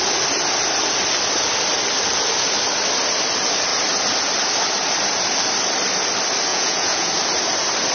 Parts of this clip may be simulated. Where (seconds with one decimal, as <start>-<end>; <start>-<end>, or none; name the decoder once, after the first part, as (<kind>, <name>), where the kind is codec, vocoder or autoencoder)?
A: 6.5-7.1 (vocoder, Vocos)